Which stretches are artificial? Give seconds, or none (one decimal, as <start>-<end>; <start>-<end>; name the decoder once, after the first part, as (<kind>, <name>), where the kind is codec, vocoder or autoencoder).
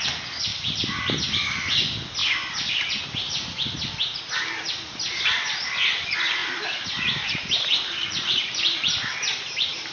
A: 0.5-1.1 (vocoder, BigVGAN v2); 6.4-9.9